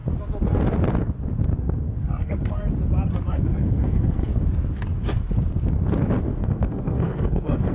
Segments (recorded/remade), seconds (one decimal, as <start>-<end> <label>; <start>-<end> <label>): 0.0-1.6 recorded; 1.6-2.6 remade; 2.6-3.3 recorded; 3.3-4.3 remade; 4.3-6.2 recorded; 6.2-7.7 remade